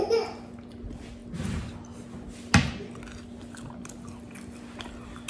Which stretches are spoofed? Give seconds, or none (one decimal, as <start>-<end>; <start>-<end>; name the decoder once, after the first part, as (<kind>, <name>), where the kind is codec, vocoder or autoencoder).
none